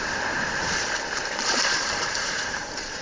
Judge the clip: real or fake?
fake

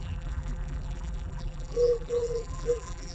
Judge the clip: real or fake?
fake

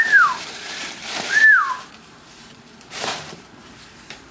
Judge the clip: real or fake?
fake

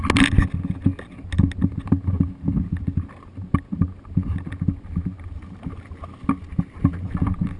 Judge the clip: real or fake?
real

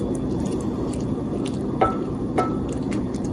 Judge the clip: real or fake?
fake